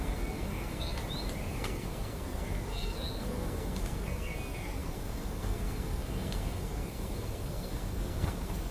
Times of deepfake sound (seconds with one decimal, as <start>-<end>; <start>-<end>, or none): 0.0-1.0; 1.5-8.7